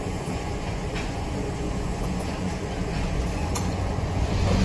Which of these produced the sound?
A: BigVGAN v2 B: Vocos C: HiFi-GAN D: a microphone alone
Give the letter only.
B